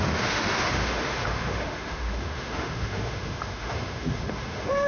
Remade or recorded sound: remade